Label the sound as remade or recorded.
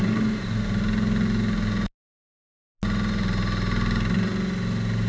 recorded